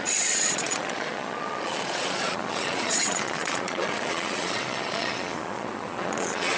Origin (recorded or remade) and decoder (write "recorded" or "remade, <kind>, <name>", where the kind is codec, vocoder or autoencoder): remade, vocoder, Vocos